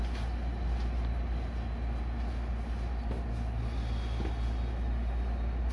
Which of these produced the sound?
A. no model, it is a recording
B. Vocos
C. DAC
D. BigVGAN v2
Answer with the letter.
A